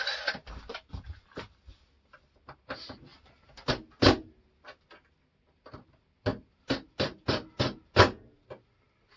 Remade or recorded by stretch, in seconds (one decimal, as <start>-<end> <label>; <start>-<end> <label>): 0.0-0.7 recorded; 0.7-1.2 remade; 1.2-3.1 recorded; 3.1-3.7 remade; 3.7-6.3 recorded; 6.3-7.5 remade; 7.5-9.2 recorded